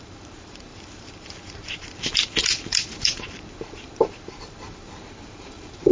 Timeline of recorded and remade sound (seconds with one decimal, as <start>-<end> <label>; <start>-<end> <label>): 0.0-5.9 remade

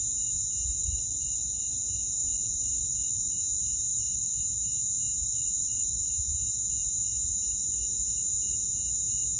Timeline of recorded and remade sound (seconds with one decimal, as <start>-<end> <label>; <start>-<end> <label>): 0.0-0.8 recorded; 0.8-1.4 remade; 1.4-2.2 recorded; 2.2-3.4 remade; 3.4-3.9 recorded; 3.9-4.4 remade; 4.4-5.2 recorded; 5.2-6.1 remade; 6.1-9.4 recorded

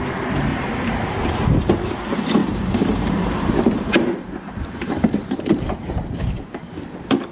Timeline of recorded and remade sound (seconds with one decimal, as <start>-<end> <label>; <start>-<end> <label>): 0.0-0.5 recorded; 0.5-1.6 remade; 1.6-2.4 recorded; 2.4-6.7 remade; 6.7-7.3 recorded

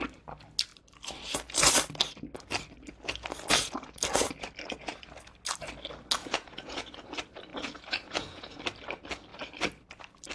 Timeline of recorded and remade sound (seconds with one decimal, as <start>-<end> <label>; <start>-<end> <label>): 0.0-6.2 recorded; 6.2-7.0 remade; 7.0-7.5 recorded; 7.5-8.6 remade; 8.6-10.3 recorded

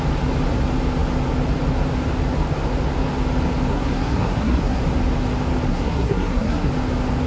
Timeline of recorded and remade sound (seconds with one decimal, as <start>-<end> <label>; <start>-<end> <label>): 0.0-3.7 recorded; 3.7-4.8 remade; 4.8-5.7 recorded; 5.7-6.7 remade; 6.7-7.3 recorded

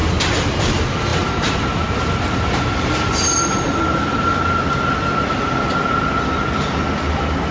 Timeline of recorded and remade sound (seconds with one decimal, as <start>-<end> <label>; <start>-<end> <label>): 0.0-1.1 recorded; 1.1-2.4 remade; 2.4-7.5 recorded

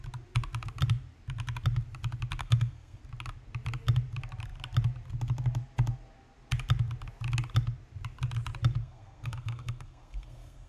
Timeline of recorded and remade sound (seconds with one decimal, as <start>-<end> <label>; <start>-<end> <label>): 0.0-2.4 recorded; 2.4-3.0 remade; 3.0-8.8 recorded; 8.8-10.7 remade